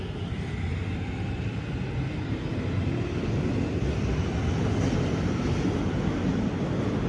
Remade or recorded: recorded